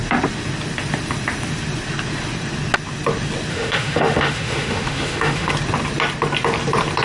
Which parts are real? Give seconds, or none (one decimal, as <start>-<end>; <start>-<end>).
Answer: 0.0-3.5; 5.5-7.0